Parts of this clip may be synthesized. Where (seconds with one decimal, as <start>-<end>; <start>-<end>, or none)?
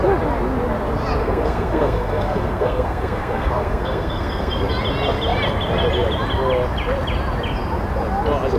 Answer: 1.2-4.7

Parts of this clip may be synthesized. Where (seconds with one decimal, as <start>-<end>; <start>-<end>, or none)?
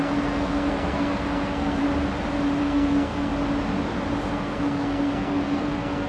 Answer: 0.0-1.8; 2.6-3.3; 4.3-6.1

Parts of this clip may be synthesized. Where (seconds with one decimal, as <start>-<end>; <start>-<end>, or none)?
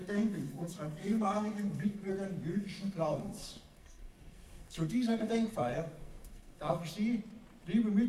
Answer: 0.0-2.1; 2.5-6.9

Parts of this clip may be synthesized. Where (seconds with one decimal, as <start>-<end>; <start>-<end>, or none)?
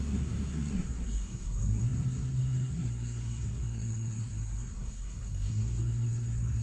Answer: 0.0-6.6